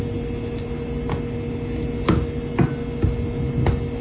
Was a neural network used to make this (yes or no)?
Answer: no